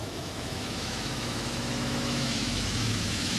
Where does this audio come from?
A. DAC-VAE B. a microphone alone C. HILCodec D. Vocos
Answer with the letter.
A